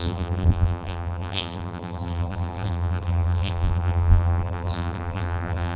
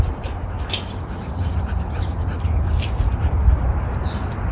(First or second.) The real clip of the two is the second